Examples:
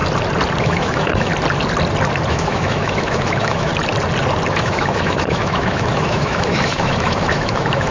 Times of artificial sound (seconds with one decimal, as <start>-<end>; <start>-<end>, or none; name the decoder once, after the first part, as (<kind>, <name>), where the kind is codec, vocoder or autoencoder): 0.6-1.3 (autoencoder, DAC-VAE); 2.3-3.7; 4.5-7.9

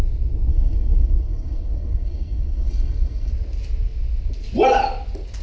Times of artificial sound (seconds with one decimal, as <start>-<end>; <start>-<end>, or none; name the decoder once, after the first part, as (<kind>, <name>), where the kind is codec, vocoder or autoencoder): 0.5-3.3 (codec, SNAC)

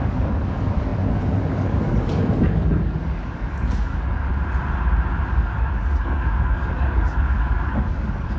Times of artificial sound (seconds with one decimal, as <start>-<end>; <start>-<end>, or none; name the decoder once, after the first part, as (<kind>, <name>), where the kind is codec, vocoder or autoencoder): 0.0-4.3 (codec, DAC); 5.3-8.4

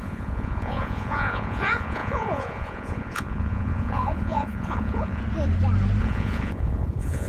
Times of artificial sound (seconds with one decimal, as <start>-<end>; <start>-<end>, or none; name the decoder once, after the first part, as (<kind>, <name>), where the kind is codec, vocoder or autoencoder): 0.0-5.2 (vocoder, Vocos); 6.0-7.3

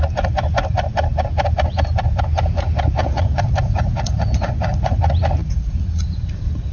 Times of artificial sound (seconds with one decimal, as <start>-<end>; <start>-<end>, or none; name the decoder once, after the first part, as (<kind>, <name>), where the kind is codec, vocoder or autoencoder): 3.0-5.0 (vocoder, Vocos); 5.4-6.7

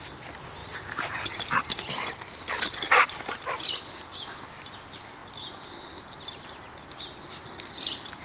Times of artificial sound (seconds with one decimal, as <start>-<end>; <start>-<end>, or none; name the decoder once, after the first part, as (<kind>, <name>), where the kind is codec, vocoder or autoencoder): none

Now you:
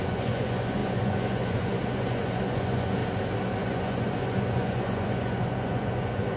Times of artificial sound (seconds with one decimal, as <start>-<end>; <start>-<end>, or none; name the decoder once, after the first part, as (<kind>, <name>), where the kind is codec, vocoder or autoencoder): 0.0-3.0 (vocoder, Vocos); 3.6-6.4

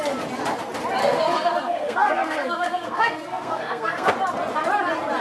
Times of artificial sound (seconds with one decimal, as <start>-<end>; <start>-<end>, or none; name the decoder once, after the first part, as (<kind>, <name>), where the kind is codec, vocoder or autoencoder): 1.0-4.1 (codec, SNAC)